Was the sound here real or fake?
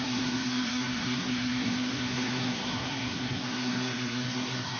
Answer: fake